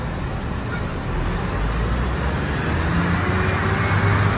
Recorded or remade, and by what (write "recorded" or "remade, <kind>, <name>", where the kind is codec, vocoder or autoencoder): recorded